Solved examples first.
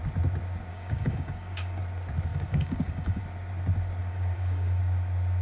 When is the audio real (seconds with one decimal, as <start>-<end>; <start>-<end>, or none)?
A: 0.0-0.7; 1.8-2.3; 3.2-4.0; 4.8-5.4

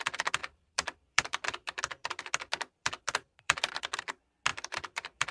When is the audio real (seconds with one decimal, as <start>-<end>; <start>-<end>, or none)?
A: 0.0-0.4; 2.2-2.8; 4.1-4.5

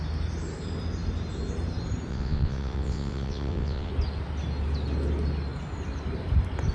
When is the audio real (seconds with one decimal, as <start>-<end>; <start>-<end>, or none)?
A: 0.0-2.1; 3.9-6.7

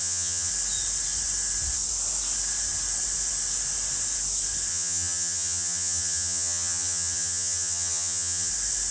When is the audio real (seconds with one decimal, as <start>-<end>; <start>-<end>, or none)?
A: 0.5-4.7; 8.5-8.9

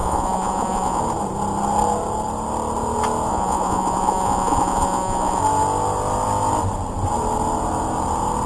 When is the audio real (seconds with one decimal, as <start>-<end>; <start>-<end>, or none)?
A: 1.0-3.3; 5.4-8.5

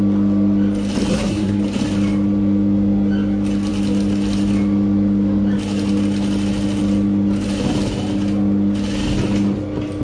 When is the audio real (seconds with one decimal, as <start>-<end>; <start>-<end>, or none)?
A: 0.0-1.1; 1.6-10.0